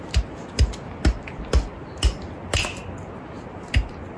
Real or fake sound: real